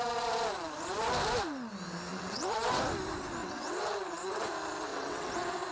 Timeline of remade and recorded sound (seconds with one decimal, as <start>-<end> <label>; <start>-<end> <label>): 0.0-2.1 recorded; 2.1-2.8 remade; 2.8-3.4 recorded; 3.4-4.5 remade; 4.5-4.9 recorded; 4.9-5.7 remade